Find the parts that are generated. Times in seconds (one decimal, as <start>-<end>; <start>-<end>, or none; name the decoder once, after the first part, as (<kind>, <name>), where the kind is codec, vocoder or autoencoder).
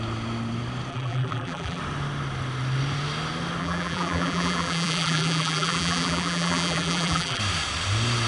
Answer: 0.9-1.8 (vocoder, BigVGAN v2); 3.6-7.4